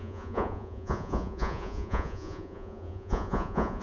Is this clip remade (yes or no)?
yes